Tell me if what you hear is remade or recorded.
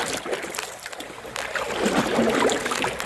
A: recorded